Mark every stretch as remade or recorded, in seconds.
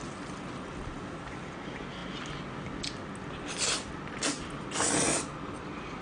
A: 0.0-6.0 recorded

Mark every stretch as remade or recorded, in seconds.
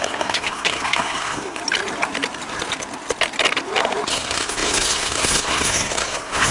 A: 0.0-1.6 remade; 1.6-4.1 recorded; 4.1-6.5 remade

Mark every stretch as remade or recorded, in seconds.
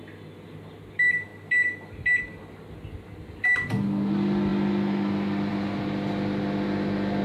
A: 0.0-7.2 recorded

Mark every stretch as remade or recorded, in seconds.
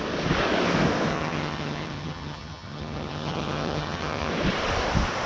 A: 0.0-1.1 recorded; 1.1-4.3 remade; 4.3-5.3 recorded